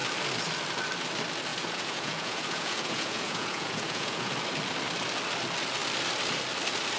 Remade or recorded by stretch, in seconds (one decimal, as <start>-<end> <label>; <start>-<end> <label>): 0.0-1.5 recorded; 1.5-4.3 remade; 4.3-7.0 recorded